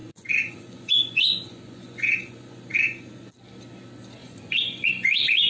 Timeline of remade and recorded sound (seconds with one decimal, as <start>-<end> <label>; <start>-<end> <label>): 0.0-3.3 remade; 3.3-4.2 recorded; 4.2-5.5 remade